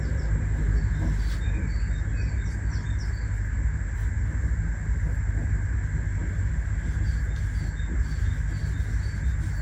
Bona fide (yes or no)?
yes